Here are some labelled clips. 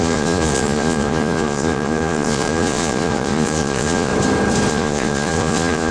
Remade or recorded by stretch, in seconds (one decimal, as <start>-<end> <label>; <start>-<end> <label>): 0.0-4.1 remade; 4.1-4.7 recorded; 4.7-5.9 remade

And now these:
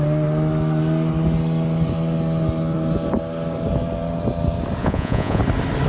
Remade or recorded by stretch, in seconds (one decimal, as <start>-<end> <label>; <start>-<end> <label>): 0.0-4.8 recorded; 4.8-5.4 remade; 5.4-5.9 recorded

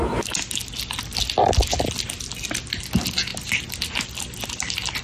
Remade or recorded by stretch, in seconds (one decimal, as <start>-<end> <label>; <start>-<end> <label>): 0.0-5.0 recorded

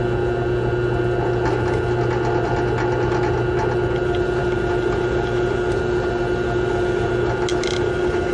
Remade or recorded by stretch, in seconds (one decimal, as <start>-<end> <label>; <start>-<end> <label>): 0.0-8.3 recorded

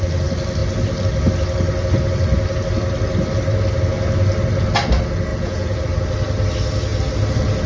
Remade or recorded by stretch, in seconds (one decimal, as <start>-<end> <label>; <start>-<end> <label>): 0.0-5.3 recorded; 5.3-5.8 remade; 5.8-7.7 recorded

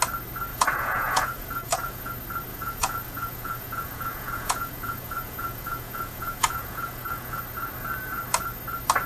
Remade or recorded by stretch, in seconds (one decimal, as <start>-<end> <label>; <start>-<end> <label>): 0.0-0.5 recorded; 0.5-2.1 remade; 2.1-2.5 recorded; 2.5-7.4 remade; 7.4-9.1 recorded

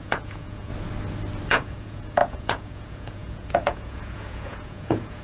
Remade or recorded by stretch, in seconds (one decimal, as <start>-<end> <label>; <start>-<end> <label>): 0.0-0.7 remade; 0.7-1.5 recorded; 1.5-5.2 remade